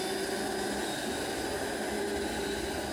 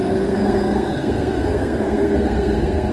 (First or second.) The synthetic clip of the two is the second